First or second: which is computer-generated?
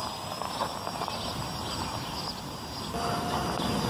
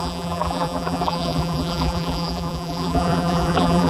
second